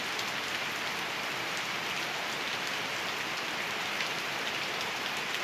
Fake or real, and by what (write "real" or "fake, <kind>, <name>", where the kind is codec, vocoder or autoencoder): real